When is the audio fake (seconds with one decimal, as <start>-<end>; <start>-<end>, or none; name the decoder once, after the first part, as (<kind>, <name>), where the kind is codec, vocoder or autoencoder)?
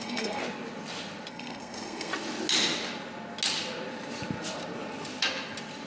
0.0-0.4 (codec, SNAC); 1.3-2.1